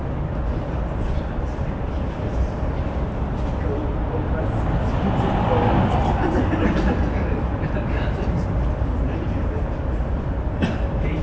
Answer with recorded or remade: recorded